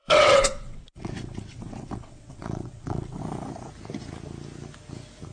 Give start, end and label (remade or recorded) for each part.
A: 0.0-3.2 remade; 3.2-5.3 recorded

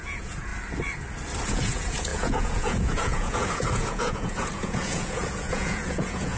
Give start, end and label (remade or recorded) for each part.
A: 0.0-0.5 remade; 0.5-1.5 recorded; 1.5-6.4 remade

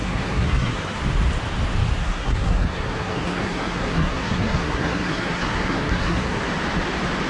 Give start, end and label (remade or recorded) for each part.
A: 0.0-1.0 remade; 1.0-2.0 recorded; 2.0-6.4 remade; 6.4-7.3 recorded

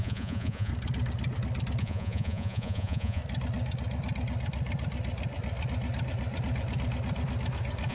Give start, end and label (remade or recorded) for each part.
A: 0.0-0.7 remade; 0.7-1.8 recorded; 1.8-3.2 remade; 3.2-7.9 recorded